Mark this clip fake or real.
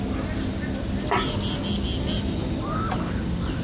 real